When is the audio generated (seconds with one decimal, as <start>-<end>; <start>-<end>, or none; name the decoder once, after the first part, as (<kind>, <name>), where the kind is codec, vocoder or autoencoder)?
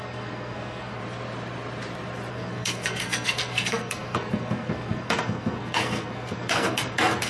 0.0-1.0 (codec, SNAC); 2.3-7.3